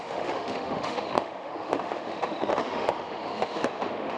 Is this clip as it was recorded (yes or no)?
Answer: no